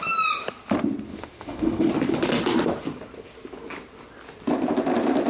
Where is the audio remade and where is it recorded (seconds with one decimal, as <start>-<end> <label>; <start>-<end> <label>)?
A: 0.0-1.1 recorded; 1.1-1.9 remade; 1.9-5.3 recorded